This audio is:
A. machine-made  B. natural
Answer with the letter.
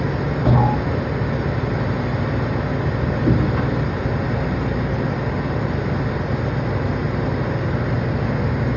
B